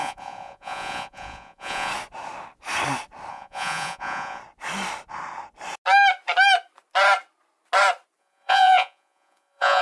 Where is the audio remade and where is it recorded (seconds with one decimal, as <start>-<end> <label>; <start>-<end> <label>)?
0.0-1.9 remade; 1.9-3.3 recorded; 3.3-4.4 remade; 4.4-8.2 recorded; 8.2-9.8 remade